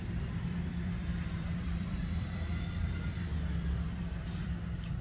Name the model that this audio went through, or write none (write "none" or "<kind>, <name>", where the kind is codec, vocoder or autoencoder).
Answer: vocoder, BigVGAN v2